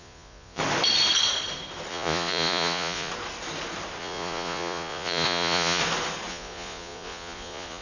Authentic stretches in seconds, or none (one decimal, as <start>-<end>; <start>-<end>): 0.6-1.9; 3.1-4.0; 5.8-6.3